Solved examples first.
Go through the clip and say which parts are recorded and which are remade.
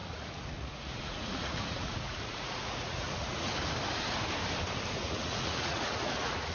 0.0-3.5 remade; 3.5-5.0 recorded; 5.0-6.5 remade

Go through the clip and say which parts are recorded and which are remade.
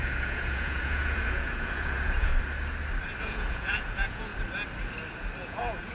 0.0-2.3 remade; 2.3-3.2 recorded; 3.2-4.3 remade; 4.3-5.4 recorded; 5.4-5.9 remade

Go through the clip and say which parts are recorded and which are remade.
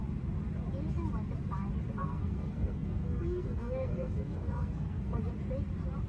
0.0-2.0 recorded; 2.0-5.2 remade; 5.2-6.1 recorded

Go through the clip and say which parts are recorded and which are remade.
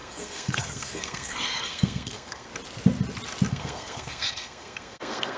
0.0-2.5 remade; 2.5-3.5 recorded; 3.5-5.4 remade